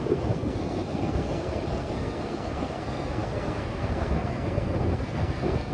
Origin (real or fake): fake